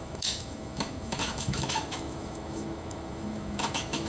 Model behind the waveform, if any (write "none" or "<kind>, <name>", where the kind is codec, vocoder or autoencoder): autoencoder, DAC-VAE